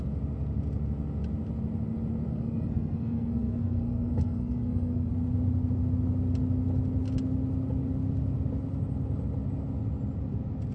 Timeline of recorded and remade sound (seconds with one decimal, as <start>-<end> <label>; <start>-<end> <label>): 0.0-2.3 recorded; 2.3-5.1 remade; 5.1-10.7 recorded